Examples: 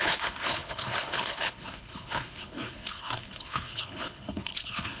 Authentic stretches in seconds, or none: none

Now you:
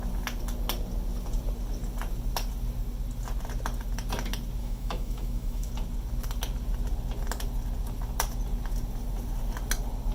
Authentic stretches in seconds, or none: 0.0-4.6; 5.7-10.1

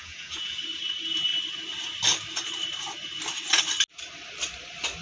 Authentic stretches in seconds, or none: 0.6-5.0

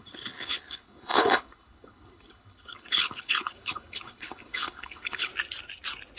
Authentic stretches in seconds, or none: 5.3-6.2

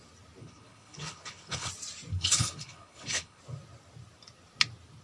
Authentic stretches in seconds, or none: 0.0-0.4; 1.7-2.1; 3.4-5.0